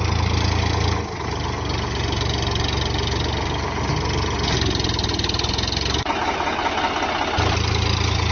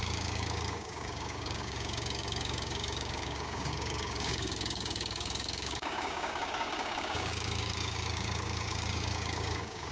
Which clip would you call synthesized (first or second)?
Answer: second